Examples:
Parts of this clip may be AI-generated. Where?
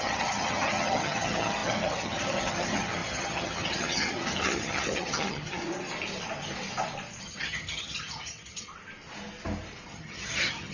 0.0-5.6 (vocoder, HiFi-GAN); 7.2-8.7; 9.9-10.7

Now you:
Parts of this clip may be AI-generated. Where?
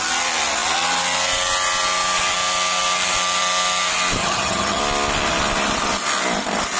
4.2-4.8 (vocoder, HiFi-GAN)